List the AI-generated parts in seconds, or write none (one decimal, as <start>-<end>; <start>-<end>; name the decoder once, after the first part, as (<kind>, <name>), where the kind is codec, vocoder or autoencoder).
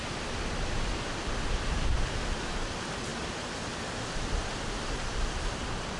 none